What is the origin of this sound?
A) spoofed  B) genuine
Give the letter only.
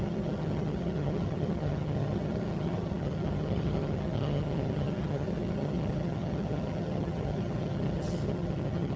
A